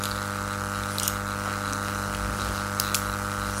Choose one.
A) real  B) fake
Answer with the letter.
A